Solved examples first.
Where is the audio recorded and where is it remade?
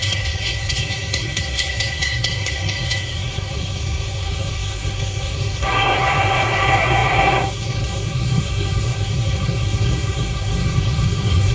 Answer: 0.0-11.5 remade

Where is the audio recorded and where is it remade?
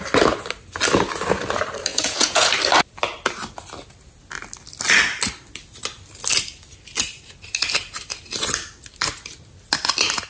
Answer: 0.0-1.9 recorded; 1.9-2.5 remade; 2.5-10.3 recorded